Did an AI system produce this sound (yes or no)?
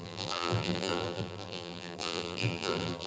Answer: yes